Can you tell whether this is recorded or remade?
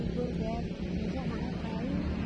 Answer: recorded